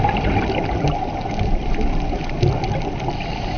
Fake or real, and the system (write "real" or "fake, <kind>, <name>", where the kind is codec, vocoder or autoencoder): real